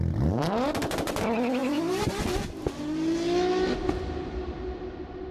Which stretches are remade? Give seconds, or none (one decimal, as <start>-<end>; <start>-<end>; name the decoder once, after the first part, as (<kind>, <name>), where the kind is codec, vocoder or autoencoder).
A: none